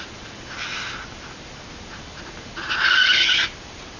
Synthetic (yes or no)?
no